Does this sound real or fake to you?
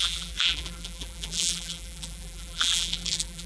fake